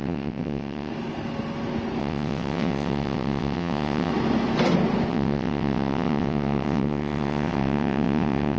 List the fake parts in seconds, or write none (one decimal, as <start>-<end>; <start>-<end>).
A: 0.0-0.9; 2.0-4.1; 5.1-8.6